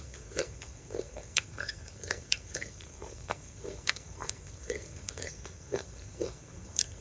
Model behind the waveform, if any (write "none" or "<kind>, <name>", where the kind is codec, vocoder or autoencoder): codec, SNAC